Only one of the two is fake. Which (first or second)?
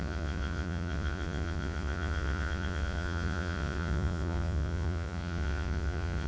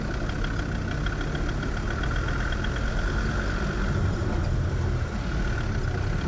first